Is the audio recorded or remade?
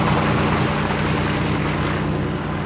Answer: recorded